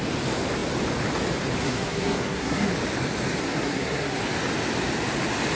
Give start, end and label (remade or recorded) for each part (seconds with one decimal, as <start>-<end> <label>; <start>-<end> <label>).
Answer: 0.0-1.6 recorded; 1.6-2.7 remade; 2.7-3.4 recorded; 3.4-4.2 remade; 4.2-5.6 recorded